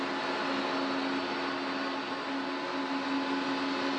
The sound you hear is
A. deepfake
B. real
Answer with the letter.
B